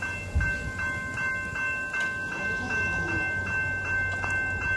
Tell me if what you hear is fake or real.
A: real